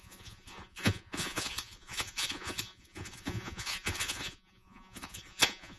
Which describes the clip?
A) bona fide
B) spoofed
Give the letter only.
B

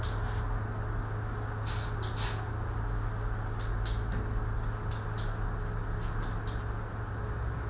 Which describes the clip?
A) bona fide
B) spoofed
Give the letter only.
A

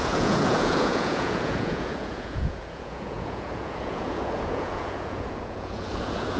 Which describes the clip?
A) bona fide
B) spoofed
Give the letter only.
B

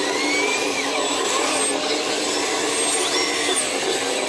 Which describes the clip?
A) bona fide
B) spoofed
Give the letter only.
A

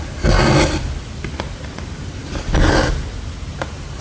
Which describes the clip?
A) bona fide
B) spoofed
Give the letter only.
A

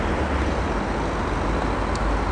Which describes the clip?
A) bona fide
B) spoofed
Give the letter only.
A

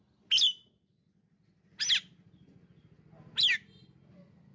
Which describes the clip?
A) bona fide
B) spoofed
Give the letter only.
A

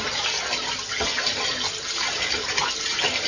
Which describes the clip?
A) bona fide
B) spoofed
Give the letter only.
A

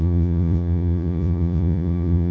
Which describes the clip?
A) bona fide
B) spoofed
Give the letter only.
B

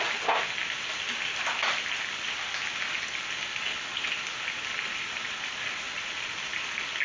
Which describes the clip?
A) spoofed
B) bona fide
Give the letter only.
B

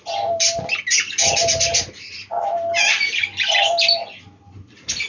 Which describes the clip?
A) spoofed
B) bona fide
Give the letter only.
B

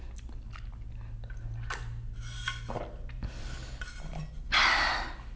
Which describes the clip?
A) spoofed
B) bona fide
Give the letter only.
B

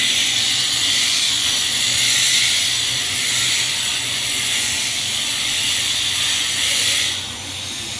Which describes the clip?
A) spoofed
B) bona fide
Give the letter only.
A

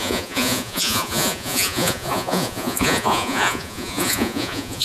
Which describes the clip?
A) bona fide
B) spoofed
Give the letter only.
B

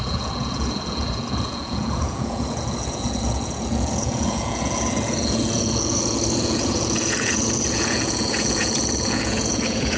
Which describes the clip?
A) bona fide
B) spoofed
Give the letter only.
B